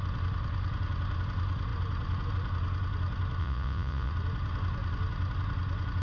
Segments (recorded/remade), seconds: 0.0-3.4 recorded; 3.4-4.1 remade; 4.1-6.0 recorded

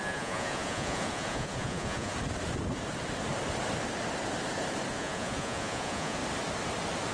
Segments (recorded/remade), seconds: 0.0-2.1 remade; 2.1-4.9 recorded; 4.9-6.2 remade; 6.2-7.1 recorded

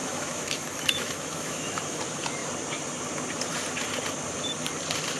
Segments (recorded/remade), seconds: 0.0-2.0 remade; 2.0-5.2 recorded

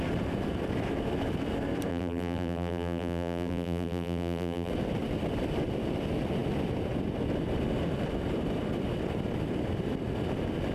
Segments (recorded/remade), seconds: 0.0-1.9 recorded; 1.9-4.7 remade; 4.7-10.7 recorded

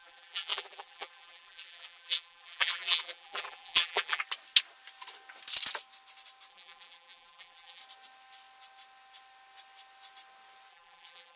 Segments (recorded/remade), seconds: 0.0-4.2 remade; 4.2-6.5 recorded; 6.5-7.8 remade; 7.8-10.7 recorded; 10.7-11.4 remade